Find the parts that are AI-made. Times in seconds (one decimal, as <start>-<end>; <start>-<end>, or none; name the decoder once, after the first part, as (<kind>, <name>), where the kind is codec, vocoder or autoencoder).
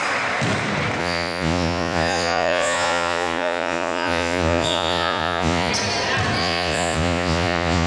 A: 1.0-5.7 (vocoder, Vocos); 6.4-7.9